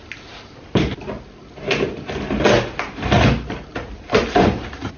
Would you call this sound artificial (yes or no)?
no